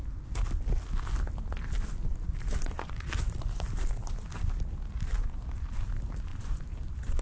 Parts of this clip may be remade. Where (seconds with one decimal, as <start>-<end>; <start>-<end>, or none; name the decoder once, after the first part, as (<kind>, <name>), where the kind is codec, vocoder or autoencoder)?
2.1-4.2 (vocoder, BigVGAN v2); 6.3-7.2